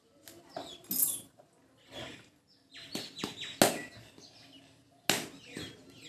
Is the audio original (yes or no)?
yes